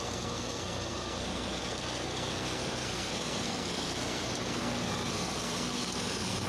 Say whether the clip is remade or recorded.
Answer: remade